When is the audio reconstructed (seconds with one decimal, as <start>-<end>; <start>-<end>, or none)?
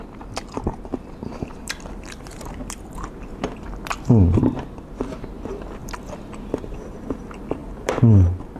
none